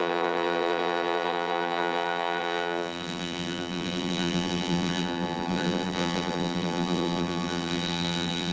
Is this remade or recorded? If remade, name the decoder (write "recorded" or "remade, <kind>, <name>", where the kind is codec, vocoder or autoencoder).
remade, vocoder, BigVGAN v2